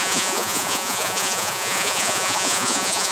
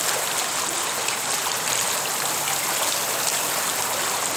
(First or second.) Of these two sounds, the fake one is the first